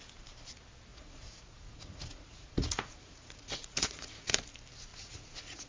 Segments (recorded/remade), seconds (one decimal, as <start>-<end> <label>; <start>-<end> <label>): 0.0-0.9 recorded; 0.9-4.3 remade; 4.3-4.9 recorded; 4.9-5.7 remade